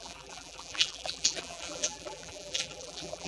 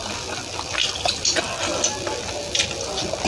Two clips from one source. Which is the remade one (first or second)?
first